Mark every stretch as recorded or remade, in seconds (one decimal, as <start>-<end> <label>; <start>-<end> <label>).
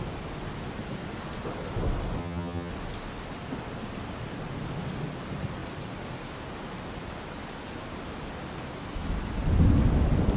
0.0-2.2 recorded; 2.2-2.7 remade; 2.7-10.4 recorded